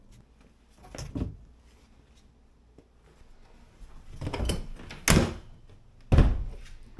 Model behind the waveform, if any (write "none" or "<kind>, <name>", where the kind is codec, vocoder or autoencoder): none